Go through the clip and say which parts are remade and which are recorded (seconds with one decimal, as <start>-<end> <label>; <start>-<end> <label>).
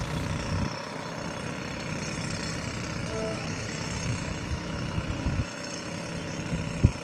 0.0-3.0 recorded; 3.0-6.0 remade; 6.0-7.0 recorded